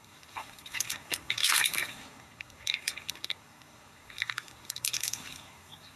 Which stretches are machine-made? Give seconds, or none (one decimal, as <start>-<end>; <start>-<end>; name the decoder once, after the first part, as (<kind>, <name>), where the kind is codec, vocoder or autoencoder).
0.0-6.0 (codec, SNAC)